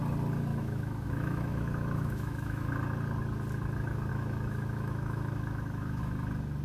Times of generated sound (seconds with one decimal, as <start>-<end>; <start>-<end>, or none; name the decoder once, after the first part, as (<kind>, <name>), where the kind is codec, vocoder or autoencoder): 0.5-2.7 (autoencoder, DAC-VAE); 4.1-6.0